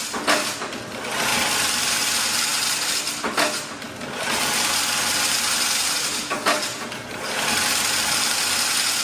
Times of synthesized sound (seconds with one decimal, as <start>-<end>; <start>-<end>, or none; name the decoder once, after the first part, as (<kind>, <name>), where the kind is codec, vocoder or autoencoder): none